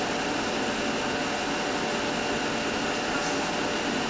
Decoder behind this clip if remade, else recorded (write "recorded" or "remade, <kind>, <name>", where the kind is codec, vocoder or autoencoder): recorded